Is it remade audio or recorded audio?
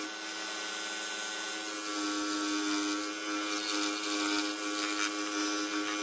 recorded